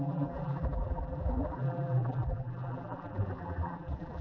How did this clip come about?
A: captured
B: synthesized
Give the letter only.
B